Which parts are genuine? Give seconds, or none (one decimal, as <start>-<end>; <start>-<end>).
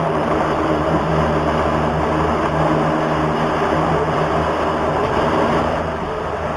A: 1.1-4.9